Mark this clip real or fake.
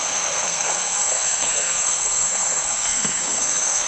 fake